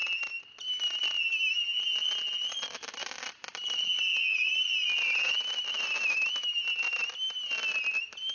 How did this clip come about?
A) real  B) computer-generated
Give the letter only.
A